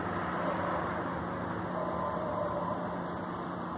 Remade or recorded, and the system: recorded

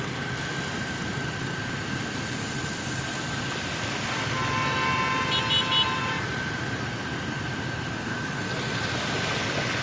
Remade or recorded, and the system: recorded